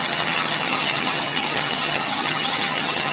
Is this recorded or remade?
remade